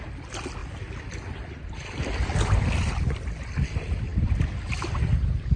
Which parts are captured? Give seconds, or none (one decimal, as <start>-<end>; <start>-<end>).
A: 0.0-5.6